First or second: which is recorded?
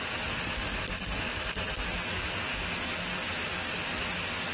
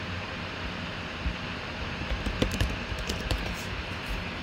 first